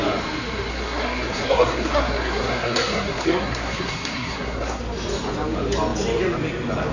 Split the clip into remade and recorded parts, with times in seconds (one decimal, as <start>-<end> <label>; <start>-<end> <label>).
0.0-0.7 recorded; 0.7-4.8 remade; 4.8-6.9 recorded